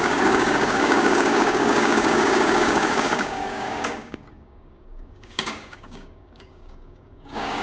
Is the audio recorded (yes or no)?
no